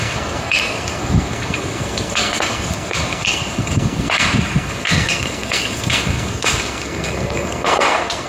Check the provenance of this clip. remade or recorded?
remade